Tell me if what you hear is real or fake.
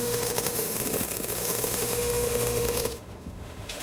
fake